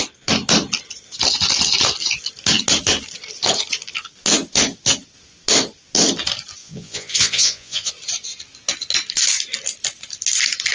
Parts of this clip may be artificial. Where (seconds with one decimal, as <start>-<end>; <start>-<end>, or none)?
6.6-7.9